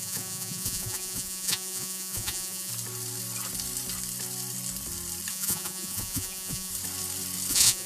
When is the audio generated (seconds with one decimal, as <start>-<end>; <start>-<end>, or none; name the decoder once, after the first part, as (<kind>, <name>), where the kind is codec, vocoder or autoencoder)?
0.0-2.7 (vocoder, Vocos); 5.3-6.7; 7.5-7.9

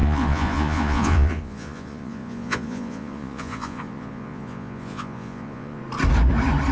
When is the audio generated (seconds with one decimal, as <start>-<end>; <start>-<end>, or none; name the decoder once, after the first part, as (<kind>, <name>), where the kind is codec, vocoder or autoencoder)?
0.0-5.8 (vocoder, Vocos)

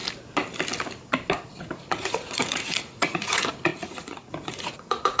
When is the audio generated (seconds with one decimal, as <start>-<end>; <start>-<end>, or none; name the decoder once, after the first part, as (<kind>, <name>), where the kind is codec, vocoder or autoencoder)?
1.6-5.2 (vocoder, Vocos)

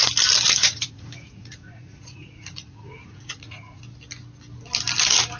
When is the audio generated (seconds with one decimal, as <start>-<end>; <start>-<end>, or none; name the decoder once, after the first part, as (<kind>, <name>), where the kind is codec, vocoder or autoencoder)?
0.6-3.8 (vocoder, Vocos)

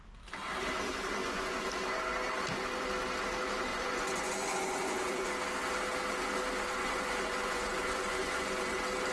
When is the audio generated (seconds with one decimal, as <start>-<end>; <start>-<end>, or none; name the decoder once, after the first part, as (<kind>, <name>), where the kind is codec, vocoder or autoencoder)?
1.2-1.7 (vocoder, Vocos); 3.7-5.3; 6.8-8.7

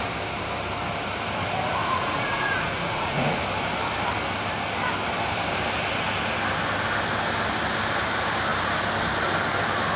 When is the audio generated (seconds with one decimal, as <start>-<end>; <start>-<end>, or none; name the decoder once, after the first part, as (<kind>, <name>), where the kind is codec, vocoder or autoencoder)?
1.8-3.4 (vocoder, Vocos)

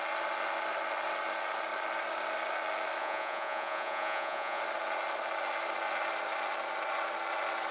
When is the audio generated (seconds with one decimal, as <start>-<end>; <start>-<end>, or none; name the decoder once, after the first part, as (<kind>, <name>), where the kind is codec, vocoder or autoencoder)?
3.0-4.6 (vocoder, Vocos)

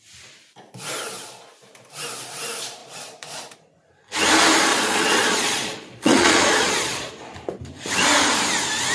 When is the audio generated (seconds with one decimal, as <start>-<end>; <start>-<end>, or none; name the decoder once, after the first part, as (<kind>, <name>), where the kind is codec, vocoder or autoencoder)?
2.8-3.4 (vocoder, Vocos); 4.7-7.1